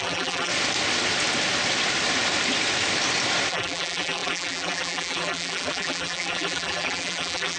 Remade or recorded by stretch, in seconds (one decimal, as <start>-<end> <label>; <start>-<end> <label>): 0.0-0.5 remade; 0.5-3.5 recorded; 3.5-7.6 remade